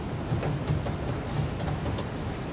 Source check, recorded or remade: recorded